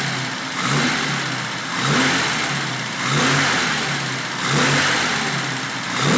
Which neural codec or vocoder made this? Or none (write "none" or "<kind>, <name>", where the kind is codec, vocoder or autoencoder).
none